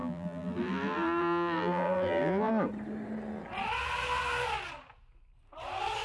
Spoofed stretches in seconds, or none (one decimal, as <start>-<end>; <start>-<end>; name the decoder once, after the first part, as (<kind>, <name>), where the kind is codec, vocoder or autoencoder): 0.0-2.5 (vocoder, BigVGAN v2)